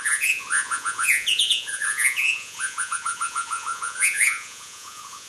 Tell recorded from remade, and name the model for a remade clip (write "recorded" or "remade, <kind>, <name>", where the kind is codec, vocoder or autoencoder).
remade, vocoder, Vocos